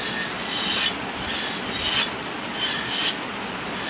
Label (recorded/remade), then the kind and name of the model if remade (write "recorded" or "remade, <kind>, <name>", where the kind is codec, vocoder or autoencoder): recorded